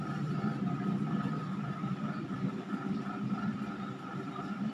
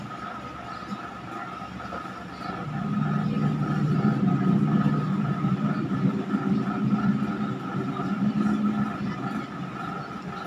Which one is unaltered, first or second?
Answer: second